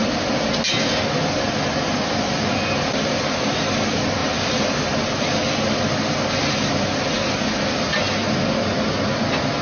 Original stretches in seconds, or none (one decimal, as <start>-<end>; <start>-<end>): 0.0-9.6

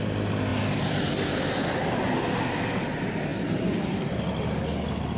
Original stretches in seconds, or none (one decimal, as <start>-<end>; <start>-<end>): 0.0-0.5; 1.1-5.2

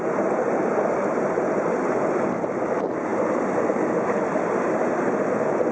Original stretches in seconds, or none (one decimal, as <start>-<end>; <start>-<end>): 0.0-5.7

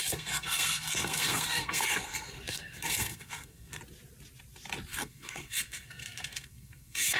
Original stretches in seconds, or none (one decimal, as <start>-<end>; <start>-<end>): 3.8-4.9

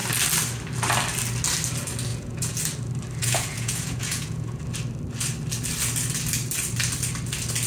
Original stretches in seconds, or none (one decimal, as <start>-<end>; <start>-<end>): 0.0-2.1; 2.6-3.2; 4.6-7.7

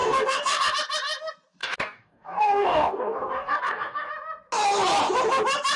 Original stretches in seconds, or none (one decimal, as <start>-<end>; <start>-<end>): 0.7-1.6; 4.1-5.8

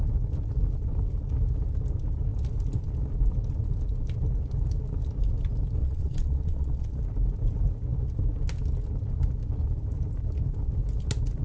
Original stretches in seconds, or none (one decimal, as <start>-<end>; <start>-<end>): 0.0-5.8; 7.0-11.4

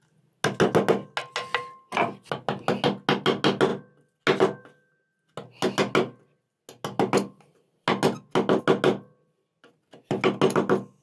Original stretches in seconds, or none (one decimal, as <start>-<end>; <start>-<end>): 0.0-11.0